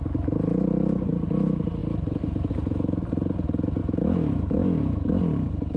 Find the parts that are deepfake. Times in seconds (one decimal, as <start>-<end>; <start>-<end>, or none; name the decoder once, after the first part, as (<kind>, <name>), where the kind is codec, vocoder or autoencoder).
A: 3.8-5.1 (autoencoder, DAC-VAE)